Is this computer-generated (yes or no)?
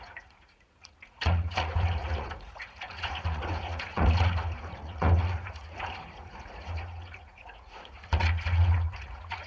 yes